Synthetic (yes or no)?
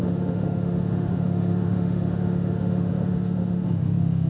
yes